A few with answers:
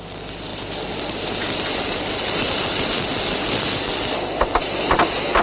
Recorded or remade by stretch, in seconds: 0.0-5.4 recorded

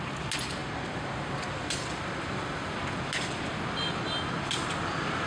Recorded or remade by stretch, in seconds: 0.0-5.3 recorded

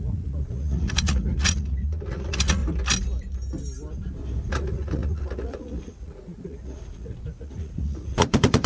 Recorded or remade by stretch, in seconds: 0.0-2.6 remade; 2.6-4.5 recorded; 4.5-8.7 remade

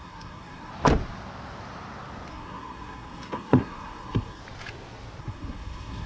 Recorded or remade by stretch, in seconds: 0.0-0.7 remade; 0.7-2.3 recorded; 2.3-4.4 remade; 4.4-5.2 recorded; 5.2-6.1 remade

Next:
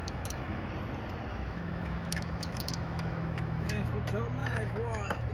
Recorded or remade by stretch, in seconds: 0.0-0.7 remade; 0.7-1.3 recorded; 1.3-3.9 remade; 3.9-4.4 recorded; 4.4-5.3 remade

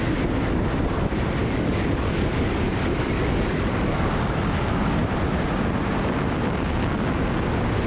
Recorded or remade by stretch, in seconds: 0.0-1.4 recorded; 1.4-4.9 remade; 4.9-7.9 recorded

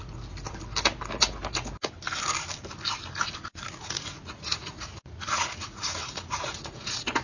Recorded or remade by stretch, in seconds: 0.0-3.8 recorded; 3.8-7.2 remade